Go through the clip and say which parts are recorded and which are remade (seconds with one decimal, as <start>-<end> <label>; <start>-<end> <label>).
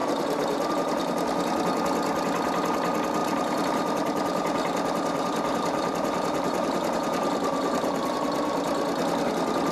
0.0-0.7 remade; 0.7-3.2 recorded; 3.2-8.1 remade; 8.1-9.7 recorded